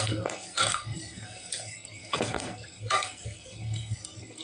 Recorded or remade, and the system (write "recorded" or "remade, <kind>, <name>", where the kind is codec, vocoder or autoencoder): remade, codec, SNAC